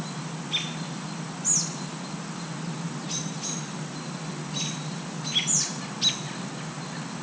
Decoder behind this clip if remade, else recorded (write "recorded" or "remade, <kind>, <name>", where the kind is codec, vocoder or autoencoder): recorded